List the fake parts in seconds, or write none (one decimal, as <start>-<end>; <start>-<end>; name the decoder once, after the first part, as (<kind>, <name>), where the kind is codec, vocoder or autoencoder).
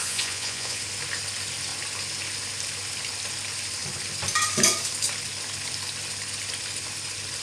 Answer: 0.0-0.8 (vocoder, Vocos)